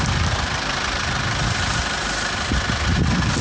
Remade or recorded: recorded